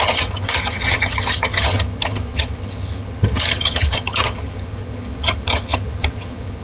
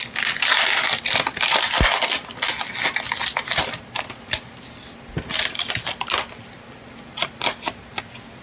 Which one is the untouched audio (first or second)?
second